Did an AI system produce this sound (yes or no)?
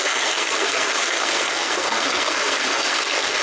yes